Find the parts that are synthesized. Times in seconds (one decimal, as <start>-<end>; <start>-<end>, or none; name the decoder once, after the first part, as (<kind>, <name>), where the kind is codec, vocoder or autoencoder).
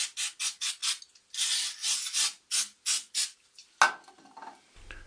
none